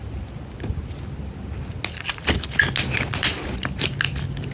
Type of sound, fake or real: real